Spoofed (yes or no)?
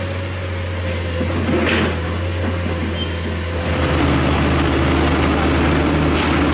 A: no